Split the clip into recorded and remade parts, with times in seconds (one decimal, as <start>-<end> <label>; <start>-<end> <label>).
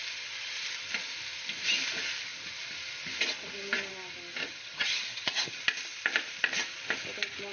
0.0-4.4 recorded; 4.4-5.6 remade; 5.6-7.5 recorded